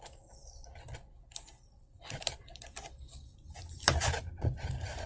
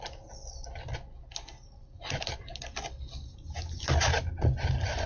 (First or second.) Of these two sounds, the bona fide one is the second